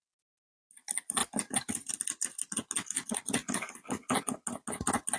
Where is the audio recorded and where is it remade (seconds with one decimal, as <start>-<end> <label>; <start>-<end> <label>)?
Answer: 0.0-5.2 recorded